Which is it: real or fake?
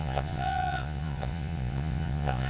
fake